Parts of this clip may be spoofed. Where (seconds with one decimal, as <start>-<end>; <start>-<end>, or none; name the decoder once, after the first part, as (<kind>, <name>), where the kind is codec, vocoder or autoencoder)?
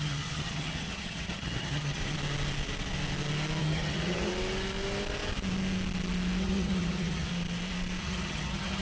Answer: 0.0-2.0 (vocoder, HiFi-GAN); 3.6-4.3; 6.4-7.3; 8.0-8.8